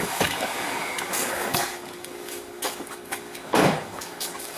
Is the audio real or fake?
fake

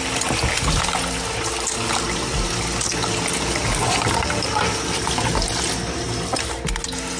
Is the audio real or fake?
real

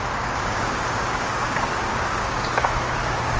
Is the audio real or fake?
fake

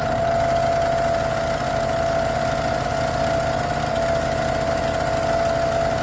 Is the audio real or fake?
real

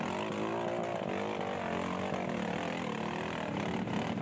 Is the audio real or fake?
real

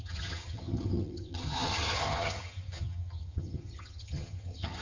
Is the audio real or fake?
fake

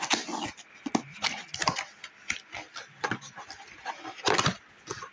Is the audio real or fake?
real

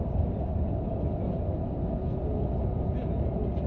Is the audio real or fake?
real